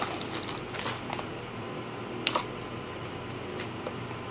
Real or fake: real